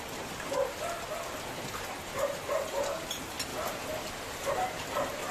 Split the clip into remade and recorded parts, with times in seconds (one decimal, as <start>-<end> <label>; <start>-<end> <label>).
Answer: 0.0-5.3 recorded